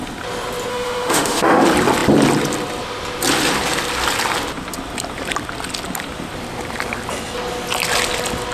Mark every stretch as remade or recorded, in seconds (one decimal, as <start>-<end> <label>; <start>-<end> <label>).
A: 0.0-0.7 recorded; 0.7-1.6 remade; 1.6-8.5 recorded